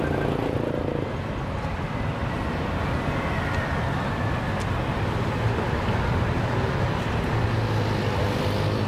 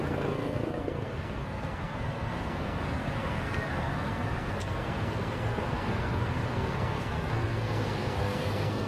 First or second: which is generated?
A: second